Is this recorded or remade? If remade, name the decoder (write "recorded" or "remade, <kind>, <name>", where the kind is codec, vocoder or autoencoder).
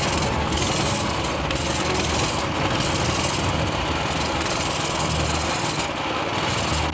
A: recorded